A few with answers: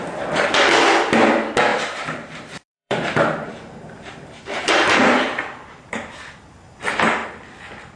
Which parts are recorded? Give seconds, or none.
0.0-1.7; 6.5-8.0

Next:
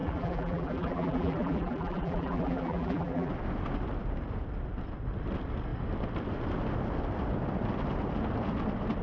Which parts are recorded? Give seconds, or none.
3.3-9.0

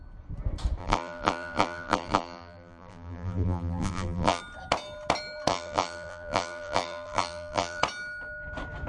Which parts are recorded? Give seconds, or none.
0.0-0.8; 4.4-5.5; 7.8-8.9

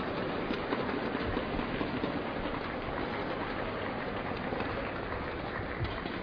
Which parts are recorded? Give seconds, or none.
0.0-3.4; 4.5-6.2

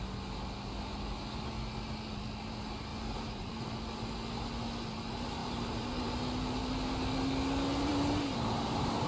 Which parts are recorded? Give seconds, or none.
0.0-2.9; 3.6-5.4; 6.1-9.1

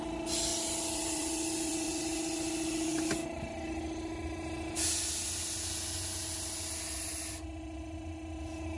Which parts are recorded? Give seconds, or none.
0.0-0.5; 2.0-8.8

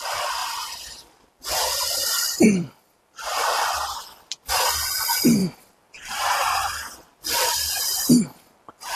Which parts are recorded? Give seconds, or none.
0.0-0.4; 4.5-5.4; 8.1-8.9